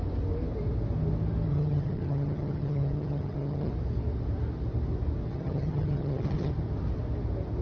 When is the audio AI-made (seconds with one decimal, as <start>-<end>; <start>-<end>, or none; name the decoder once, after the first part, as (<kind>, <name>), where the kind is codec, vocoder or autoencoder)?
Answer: 1.5-3.7 (vocoder, HiFi-GAN); 5.3-6.5

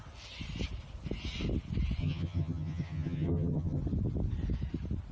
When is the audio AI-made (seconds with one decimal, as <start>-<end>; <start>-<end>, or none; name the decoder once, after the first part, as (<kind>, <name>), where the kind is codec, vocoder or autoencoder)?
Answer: 2.0-3.8 (vocoder, HiFi-GAN)